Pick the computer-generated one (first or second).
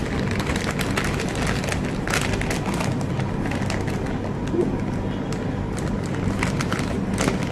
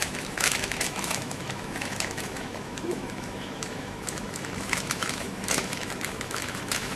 second